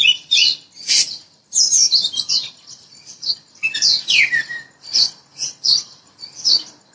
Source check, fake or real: fake